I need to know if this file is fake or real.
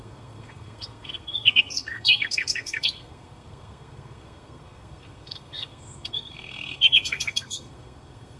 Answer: fake